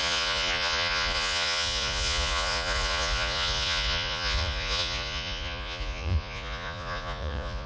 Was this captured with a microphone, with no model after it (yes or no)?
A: no